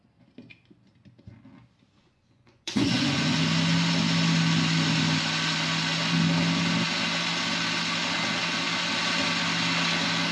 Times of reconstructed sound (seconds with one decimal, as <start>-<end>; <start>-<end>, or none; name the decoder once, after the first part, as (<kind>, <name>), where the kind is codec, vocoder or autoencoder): 2.0-3.4 (vocoder, Vocos)